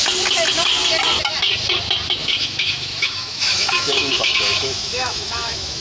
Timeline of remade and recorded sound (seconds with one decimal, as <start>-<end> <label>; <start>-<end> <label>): 0.0-2.2 recorded; 2.2-5.8 remade